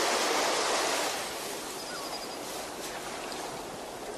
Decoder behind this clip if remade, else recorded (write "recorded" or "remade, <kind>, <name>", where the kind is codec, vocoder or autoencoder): recorded